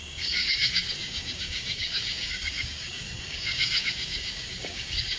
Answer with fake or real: fake